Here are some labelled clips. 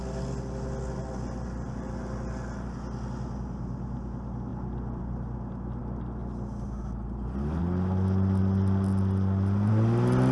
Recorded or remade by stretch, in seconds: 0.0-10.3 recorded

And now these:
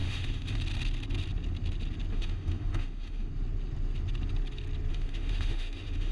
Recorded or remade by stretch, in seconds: 0.0-0.6 remade; 0.6-2.1 recorded; 2.1-3.3 remade; 3.3-4.9 recorded; 4.9-6.1 remade

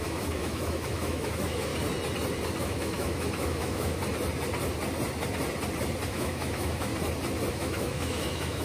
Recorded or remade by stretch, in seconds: 0.0-1.7 remade; 1.7-2.6 recorded; 2.6-4.0 remade; 4.0-6.1 recorded; 6.1-6.9 remade; 6.9-7.5 recorded; 7.5-8.6 remade

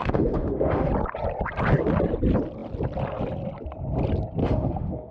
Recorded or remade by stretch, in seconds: 0.0-0.9 remade; 0.9-4.4 recorded; 4.4-5.1 remade

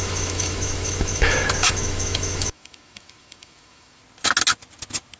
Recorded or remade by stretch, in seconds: 0.0-4.0 remade; 4.0-5.2 recorded